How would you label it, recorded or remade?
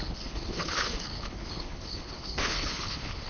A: remade